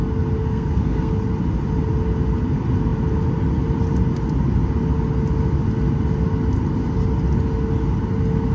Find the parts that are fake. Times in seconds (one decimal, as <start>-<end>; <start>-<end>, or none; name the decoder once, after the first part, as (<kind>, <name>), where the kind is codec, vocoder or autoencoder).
0.4-1.1 (codec, SNAC)